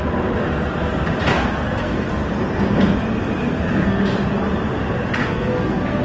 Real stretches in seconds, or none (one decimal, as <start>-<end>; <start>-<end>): 0.0-1.3; 2.1-3.4; 4.0-5.2